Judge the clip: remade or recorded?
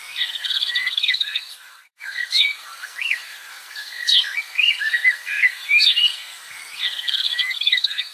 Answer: remade